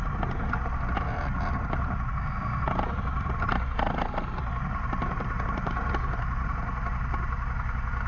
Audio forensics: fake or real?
real